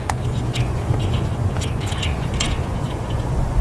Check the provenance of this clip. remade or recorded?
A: remade